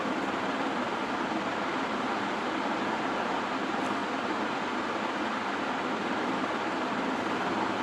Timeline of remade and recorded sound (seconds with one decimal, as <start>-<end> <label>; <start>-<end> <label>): 0.0-7.8 recorded